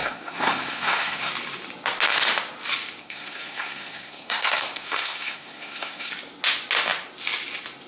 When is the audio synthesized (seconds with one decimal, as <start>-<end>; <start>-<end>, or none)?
0.0-1.3; 3.0-6.1